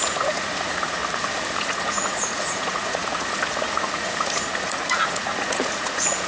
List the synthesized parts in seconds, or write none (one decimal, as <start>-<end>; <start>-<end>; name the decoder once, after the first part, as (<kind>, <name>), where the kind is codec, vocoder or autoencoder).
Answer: 0.0-1.0 (vocoder, Vocos); 1.6-6.3